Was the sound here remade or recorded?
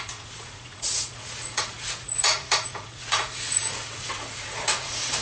remade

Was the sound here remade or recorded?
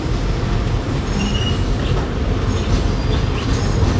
recorded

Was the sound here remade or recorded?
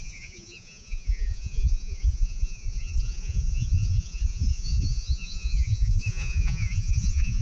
remade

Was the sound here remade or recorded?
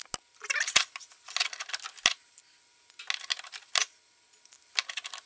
recorded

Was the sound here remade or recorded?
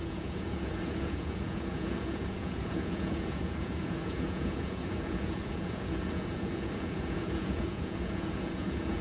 remade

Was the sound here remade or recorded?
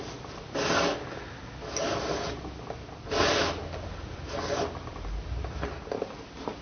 recorded